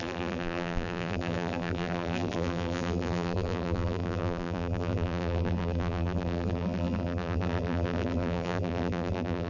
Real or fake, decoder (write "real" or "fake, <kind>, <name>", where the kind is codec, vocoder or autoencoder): fake, vocoder, BigVGAN v2